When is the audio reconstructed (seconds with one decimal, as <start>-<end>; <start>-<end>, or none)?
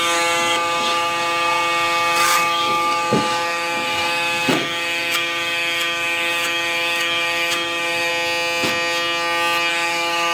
0.0-8.1; 9.7-10.3